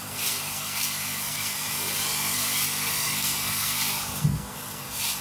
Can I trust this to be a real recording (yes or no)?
no